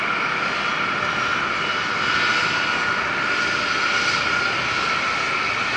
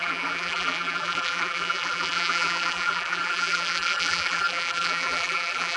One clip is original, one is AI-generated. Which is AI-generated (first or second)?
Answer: second